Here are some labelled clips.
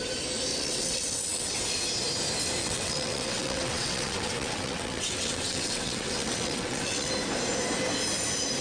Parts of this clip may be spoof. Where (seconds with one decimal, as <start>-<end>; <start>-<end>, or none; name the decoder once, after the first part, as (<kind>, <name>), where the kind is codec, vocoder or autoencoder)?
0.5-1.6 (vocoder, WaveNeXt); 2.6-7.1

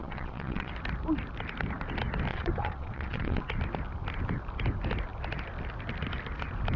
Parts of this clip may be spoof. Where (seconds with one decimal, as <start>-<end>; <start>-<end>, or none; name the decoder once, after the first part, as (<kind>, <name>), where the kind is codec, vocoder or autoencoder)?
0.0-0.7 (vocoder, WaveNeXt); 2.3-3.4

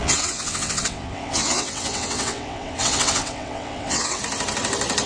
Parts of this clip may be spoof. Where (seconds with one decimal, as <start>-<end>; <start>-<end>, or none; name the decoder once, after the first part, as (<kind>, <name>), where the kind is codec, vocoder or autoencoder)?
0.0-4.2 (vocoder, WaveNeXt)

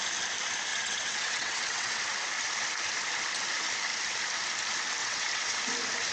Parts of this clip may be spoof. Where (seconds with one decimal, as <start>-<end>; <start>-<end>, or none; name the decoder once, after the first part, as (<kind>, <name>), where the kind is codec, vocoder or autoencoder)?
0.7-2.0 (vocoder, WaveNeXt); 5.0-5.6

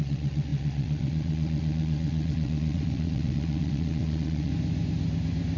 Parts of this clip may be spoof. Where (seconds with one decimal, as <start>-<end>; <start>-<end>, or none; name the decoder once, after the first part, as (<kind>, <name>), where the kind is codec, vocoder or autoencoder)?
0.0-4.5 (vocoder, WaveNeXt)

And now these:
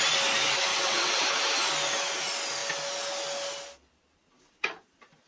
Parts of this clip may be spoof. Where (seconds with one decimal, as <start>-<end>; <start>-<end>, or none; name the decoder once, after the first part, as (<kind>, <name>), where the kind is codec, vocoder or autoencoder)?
0.7-1.2 (vocoder, WaveNeXt)

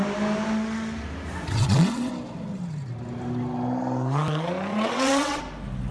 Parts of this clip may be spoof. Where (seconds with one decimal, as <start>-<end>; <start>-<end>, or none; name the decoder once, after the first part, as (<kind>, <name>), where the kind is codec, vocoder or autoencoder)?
1.5-2.1 (vocoder, WaveNeXt); 4.7-5.4